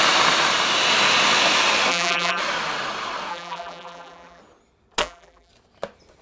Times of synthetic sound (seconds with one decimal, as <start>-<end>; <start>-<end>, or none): 1.9-2.4; 3.3-4.4; 5.0-5.5